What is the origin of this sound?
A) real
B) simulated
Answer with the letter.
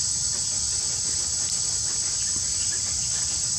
A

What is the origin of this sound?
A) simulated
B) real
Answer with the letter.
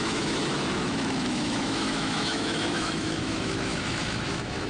A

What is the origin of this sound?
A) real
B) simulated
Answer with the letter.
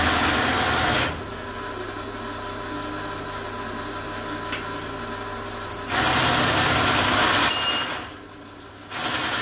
A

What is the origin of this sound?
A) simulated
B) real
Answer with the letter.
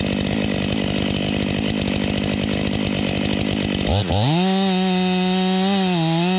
B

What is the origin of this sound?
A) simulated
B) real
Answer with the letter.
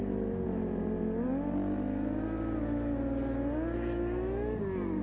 B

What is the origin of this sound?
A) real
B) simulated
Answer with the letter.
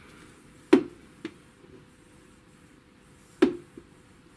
A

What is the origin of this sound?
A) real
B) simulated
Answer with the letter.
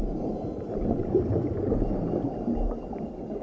A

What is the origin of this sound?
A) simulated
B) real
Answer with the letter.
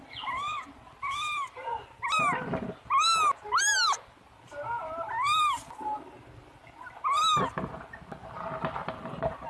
B